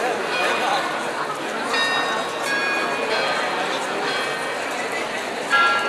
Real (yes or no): yes